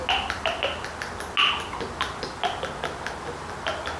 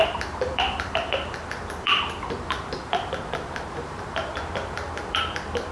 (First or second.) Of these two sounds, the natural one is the first